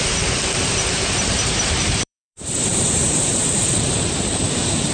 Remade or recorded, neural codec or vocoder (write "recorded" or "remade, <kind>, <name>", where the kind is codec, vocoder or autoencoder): remade, vocoder, BigVGAN v2